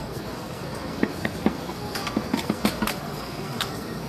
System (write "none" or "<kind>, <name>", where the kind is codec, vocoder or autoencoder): codec, SNAC